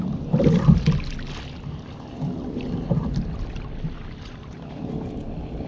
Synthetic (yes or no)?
no